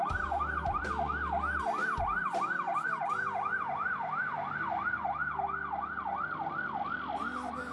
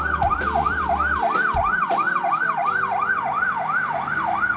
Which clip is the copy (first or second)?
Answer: second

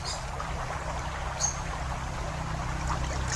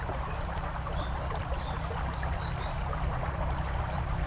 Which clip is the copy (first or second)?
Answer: second